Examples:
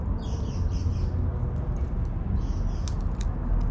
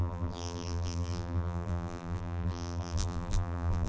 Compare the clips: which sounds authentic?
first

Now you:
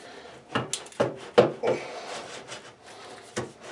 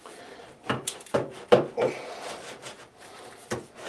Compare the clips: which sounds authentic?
first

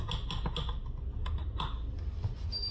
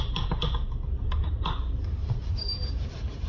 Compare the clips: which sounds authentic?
first